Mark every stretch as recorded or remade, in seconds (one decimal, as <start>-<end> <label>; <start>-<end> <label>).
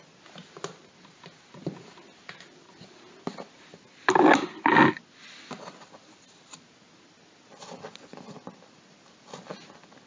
0.0-10.1 recorded